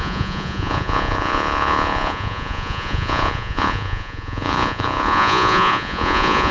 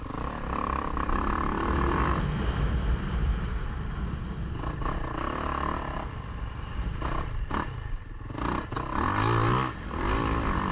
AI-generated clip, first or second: first